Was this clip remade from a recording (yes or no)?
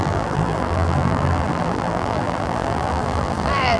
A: yes